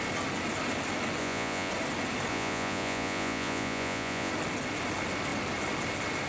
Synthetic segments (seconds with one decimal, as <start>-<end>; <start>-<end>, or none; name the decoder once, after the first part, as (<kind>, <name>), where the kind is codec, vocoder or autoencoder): 1.2-1.7 (vocoder, Vocos); 2.3-4.3